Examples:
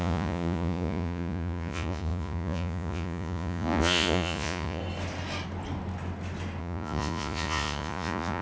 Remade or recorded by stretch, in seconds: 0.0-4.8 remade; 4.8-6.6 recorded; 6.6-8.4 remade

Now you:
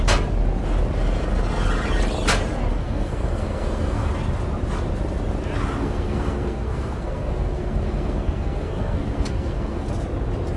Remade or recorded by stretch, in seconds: 0.0-2.7 recorded; 2.7-4.1 remade; 4.1-5.8 recorded; 5.8-9.9 remade; 9.9-10.6 recorded

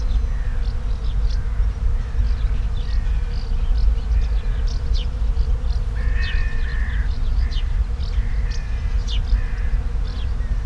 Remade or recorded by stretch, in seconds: 0.0-6.7 recorded; 6.7-7.5 remade; 7.5-9.7 recorded; 9.7-10.7 remade